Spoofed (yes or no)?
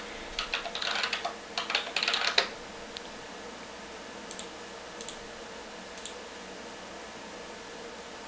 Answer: no